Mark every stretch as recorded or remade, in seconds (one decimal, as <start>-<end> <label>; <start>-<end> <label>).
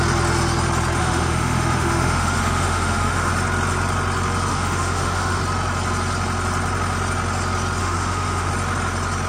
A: 0.0-1.0 recorded; 1.0-3.3 remade; 3.3-4.5 recorded; 4.5-5.4 remade; 5.4-7.8 recorded; 7.8-8.5 remade; 8.5-9.3 recorded